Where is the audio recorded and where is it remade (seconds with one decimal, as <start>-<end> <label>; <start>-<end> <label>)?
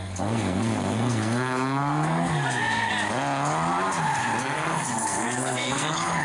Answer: 0.0-2.9 remade; 2.9-4.4 recorded; 4.4-6.2 remade